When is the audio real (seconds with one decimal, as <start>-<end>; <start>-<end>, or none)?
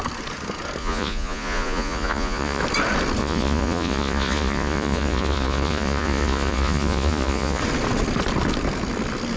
0.0-0.8; 2.6-3.2; 7.6-9.4